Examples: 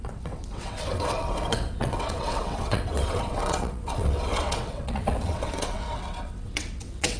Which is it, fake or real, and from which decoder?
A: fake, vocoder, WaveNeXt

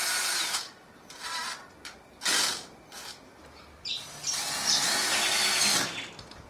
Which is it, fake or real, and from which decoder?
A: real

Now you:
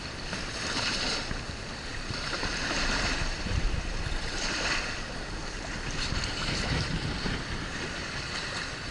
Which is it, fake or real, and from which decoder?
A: fake, vocoder, BigVGAN v2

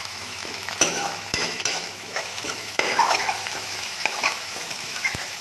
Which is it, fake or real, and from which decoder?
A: fake, autoencoder, DAC-VAE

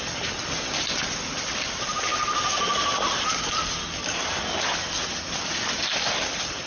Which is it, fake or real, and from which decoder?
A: real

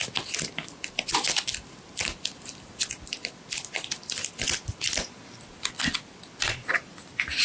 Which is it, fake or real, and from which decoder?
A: real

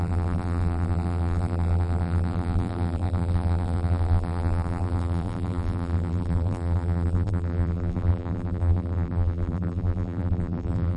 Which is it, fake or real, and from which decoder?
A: fake, vocoder, BigVGAN v2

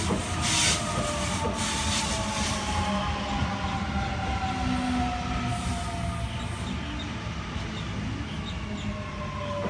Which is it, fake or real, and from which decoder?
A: real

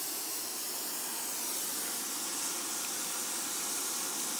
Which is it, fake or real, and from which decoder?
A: fake, vocoder, BigVGAN v2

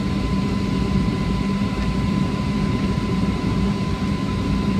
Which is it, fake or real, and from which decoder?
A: fake, vocoder, BigVGAN v2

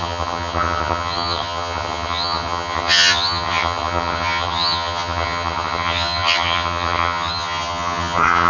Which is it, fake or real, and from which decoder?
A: fake, vocoder, HiFi-GAN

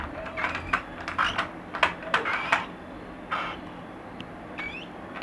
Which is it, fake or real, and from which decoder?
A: real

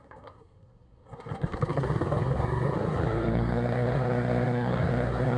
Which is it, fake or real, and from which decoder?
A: fake, codec, SNAC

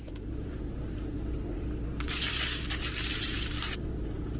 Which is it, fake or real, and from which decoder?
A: fake, vocoder, BigVGAN v2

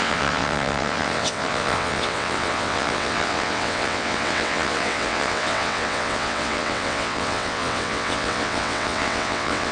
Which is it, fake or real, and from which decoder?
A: fake, vocoder, WaveNeXt